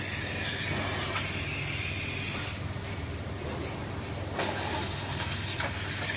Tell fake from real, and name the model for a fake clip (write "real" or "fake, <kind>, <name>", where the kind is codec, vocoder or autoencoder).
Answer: real